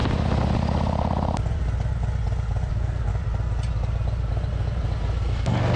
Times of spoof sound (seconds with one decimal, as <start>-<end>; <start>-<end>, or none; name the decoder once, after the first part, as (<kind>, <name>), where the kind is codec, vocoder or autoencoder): 2.7-3.1 (codec, SNAC); 5.3-5.8